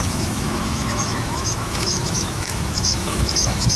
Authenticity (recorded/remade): remade